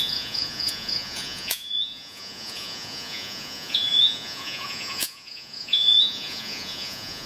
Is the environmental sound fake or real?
fake